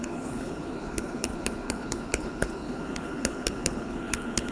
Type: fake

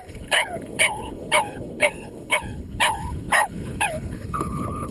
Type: fake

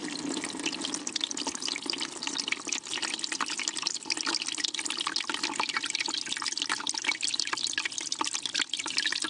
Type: real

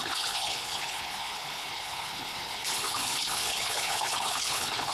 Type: fake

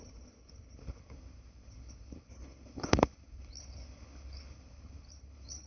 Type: fake